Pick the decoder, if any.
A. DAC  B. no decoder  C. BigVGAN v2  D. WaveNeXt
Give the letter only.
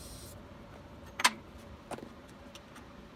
B